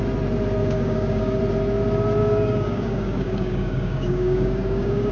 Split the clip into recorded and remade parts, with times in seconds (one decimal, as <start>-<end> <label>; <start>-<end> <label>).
0.0-0.6 recorded; 0.6-1.4 remade; 1.4-2.2 recorded; 2.2-5.1 remade